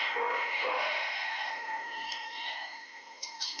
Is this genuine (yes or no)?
no